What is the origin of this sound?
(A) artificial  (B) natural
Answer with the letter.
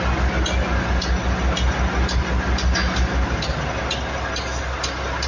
B